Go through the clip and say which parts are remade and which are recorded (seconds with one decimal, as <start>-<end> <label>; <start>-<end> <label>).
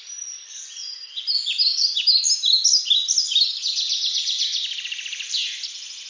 0.0-6.1 recorded